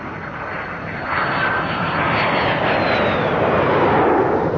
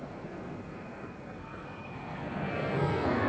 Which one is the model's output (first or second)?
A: second